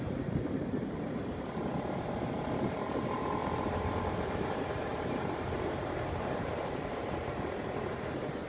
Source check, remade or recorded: remade